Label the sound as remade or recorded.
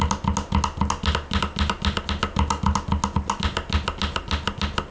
recorded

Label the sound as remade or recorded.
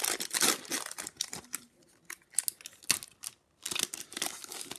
recorded